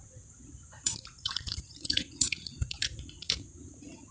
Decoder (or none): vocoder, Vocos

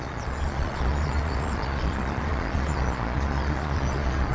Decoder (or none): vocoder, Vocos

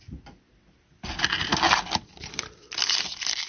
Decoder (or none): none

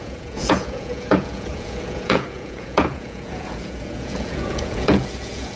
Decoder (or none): vocoder, Vocos